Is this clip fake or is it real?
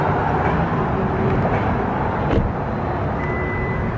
real